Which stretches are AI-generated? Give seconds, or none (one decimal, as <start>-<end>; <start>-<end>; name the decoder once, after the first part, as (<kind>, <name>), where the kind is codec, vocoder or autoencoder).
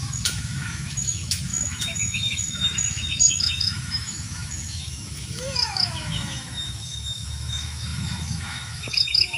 0.0-9.4 (autoencoder, DAC-VAE)